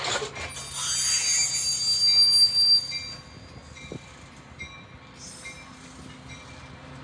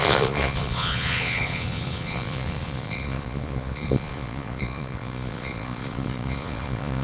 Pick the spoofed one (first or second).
second